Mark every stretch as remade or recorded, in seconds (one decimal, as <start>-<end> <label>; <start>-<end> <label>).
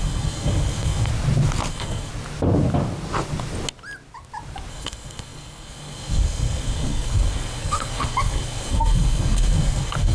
0.0-1.1 remade; 1.1-1.7 recorded; 1.7-2.1 remade; 2.1-4.7 recorded; 4.7-10.1 remade